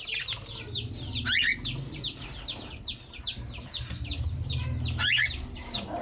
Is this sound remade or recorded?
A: recorded